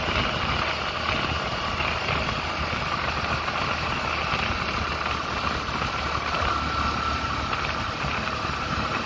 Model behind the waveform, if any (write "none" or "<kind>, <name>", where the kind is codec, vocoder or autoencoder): none